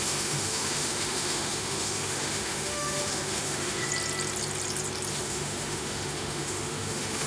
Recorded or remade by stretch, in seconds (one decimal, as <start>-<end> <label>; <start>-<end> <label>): 0.0-3.9 remade; 3.9-5.1 recorded; 5.1-7.3 remade